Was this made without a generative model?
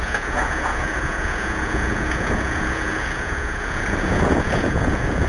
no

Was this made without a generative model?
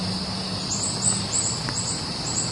yes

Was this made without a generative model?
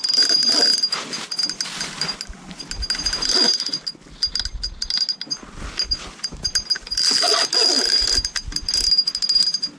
yes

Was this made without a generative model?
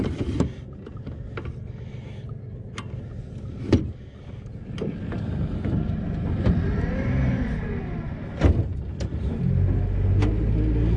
yes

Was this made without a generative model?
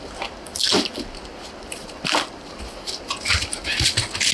yes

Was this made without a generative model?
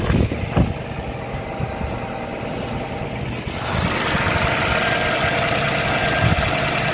yes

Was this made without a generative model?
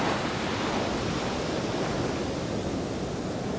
yes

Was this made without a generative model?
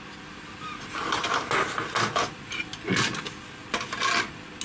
yes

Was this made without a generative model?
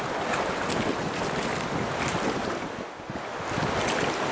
yes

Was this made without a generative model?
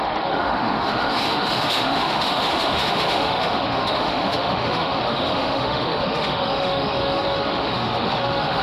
no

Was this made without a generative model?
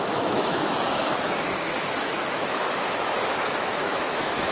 no